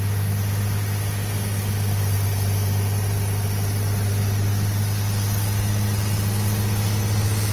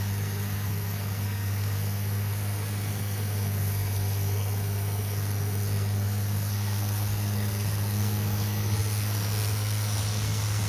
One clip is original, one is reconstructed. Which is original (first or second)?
first